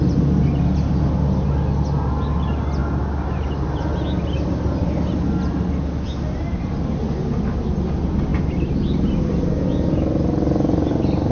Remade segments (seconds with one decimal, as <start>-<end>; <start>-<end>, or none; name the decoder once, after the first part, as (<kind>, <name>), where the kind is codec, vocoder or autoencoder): none